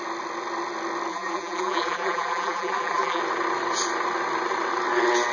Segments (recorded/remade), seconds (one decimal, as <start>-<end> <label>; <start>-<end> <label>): 0.0-1.1 recorded; 1.1-3.2 remade; 3.2-5.3 recorded